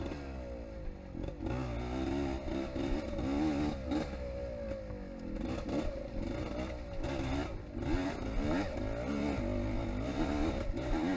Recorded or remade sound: recorded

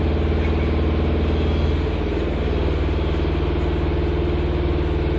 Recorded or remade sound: recorded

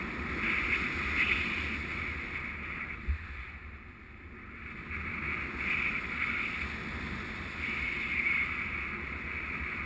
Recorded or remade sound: recorded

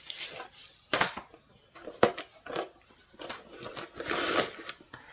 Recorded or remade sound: recorded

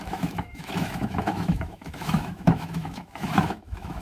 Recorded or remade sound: remade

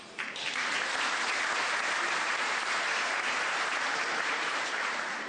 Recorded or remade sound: remade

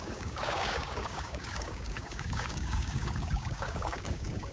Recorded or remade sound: remade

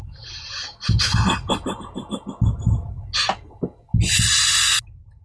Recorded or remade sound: recorded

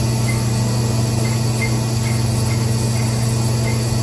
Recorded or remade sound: recorded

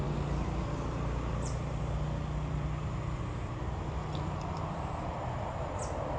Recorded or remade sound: remade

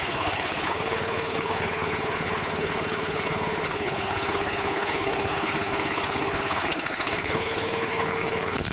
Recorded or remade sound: remade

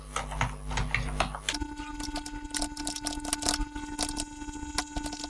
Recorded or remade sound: recorded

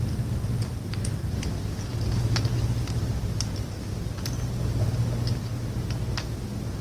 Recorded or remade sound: recorded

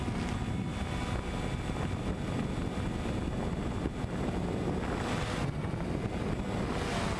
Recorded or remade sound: recorded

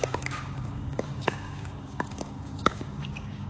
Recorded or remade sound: remade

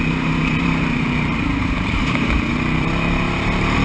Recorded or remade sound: remade